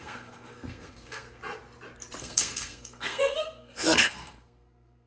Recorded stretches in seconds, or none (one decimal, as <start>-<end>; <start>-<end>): 1.4-2.2